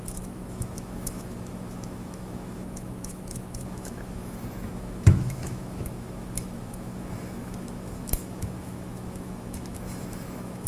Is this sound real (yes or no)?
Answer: no